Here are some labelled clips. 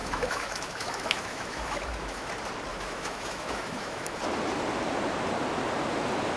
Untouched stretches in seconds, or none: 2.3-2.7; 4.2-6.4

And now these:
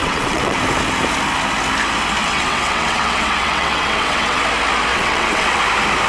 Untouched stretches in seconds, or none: 0.6-2.2; 4.4-4.9; 5.6-6.1

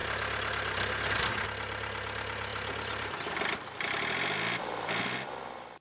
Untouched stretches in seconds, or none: 0.0-2.5; 4.6-5.8

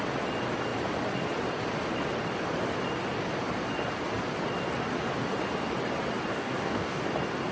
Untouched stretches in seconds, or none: 0.0-6.3; 7.0-7.5

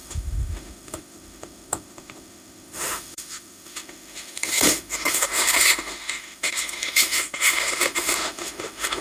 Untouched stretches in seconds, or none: none

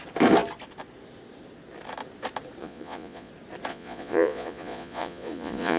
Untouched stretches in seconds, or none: 0.0-2.6; 3.3-3.7

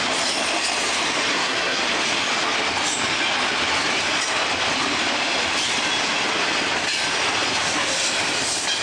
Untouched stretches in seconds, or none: 0.0-1.3; 1.8-8.8